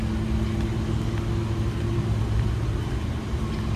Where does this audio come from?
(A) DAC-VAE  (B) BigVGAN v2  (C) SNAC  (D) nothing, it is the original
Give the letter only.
D